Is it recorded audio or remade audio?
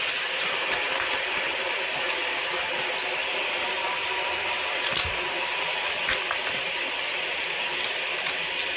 remade